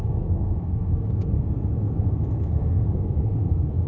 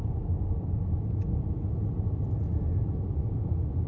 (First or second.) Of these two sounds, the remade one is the first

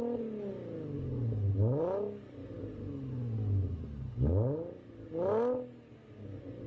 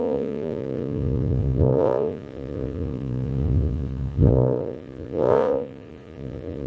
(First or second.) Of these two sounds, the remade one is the second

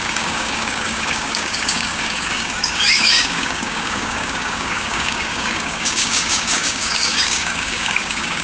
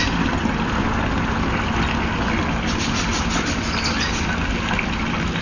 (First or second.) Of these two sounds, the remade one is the first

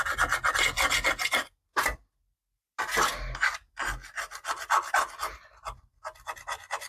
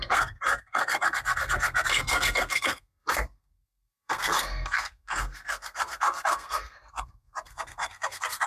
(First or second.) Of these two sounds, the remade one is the second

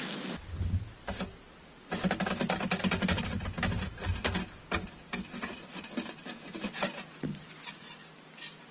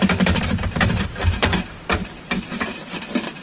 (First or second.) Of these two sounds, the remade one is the second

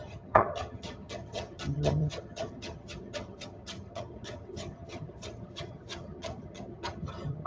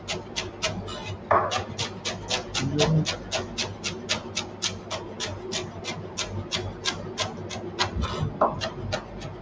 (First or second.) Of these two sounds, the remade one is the first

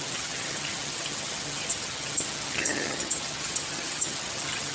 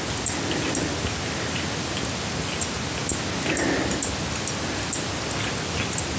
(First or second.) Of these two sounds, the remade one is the first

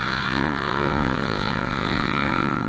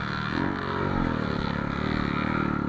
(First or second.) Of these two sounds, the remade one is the first